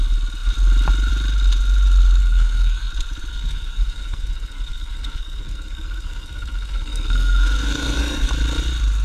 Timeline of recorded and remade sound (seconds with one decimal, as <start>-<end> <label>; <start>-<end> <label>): 0.0-2.2 recorded; 2.2-2.9 remade; 2.9-3.3 recorded; 3.3-8.3 remade; 8.3-9.0 recorded